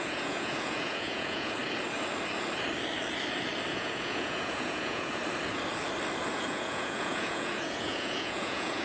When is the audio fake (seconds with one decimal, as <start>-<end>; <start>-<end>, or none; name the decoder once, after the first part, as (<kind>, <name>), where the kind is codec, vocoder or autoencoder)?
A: 0.0-1.6 (vocoder, Vocos); 3.7-5.2; 6.3-8.8